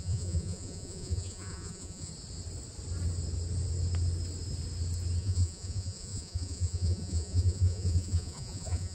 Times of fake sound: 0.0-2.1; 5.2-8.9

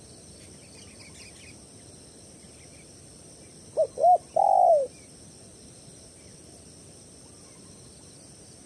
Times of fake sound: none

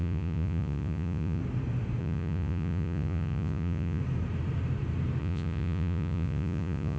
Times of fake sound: 0.0-1.4; 2.0-4.0; 5.2-7.0